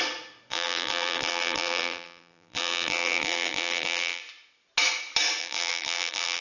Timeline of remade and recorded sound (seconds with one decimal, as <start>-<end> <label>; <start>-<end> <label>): 0.0-0.5 recorded; 0.5-4.2 remade; 4.2-5.4 recorded; 5.4-6.4 remade